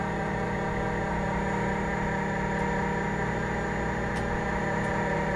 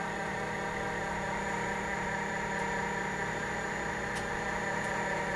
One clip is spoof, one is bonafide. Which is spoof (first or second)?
second